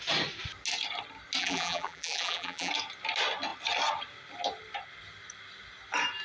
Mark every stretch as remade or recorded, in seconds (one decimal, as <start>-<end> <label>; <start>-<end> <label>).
0.0-1.4 recorded; 1.4-2.7 remade; 2.7-6.2 recorded